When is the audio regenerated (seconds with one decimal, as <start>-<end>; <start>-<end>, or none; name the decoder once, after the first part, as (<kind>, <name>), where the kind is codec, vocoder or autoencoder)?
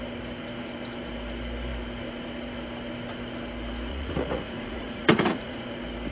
3.9-5.6 (vocoder, Vocos)